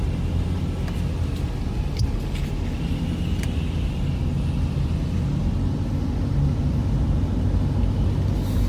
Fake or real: real